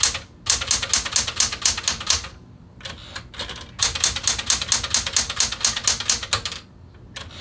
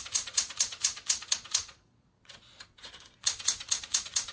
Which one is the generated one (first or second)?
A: second